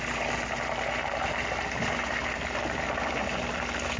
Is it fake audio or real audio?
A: real